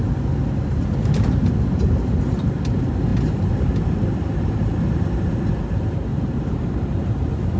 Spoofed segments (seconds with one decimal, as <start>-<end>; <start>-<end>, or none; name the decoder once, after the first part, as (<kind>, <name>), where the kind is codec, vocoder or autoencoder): 6.1-6.9 (vocoder, BigVGAN v2)